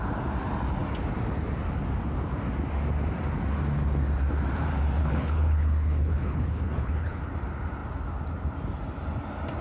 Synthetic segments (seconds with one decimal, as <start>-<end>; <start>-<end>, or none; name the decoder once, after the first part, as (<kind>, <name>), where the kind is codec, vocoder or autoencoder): 5.0-7.2 (codec, HILCodec)